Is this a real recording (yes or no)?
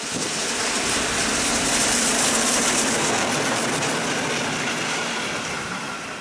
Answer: no